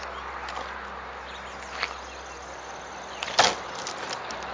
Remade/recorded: recorded